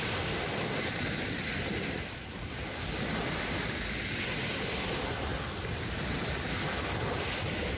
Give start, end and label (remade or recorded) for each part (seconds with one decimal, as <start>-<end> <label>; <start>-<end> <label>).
0.0-7.8 recorded